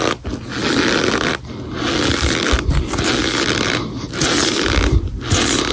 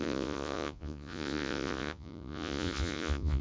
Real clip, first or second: first